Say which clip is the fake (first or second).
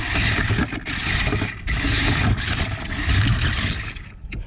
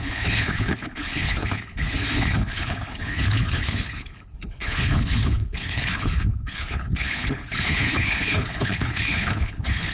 second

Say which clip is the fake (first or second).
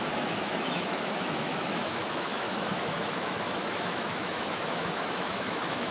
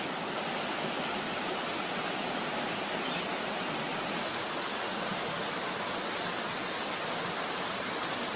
first